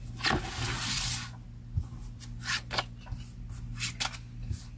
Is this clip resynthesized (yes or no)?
no